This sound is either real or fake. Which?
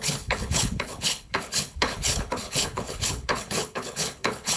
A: fake